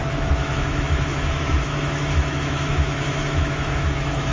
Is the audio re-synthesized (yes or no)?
yes